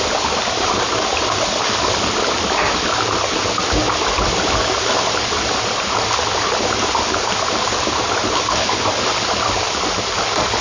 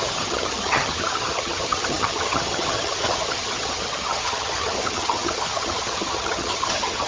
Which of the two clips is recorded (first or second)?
first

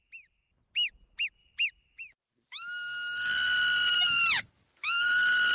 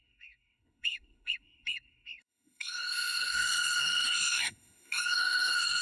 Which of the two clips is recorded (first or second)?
first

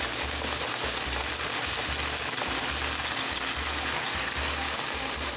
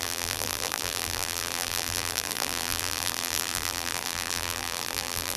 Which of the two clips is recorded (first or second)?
first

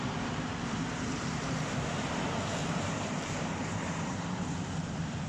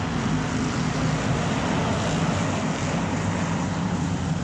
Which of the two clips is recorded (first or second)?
second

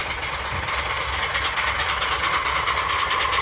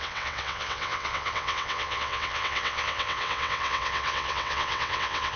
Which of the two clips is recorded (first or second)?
first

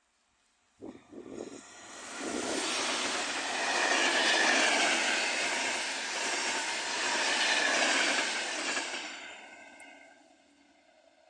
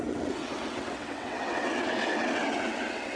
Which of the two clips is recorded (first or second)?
first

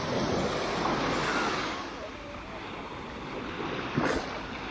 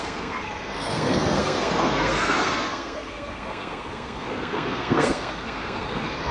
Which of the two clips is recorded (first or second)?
first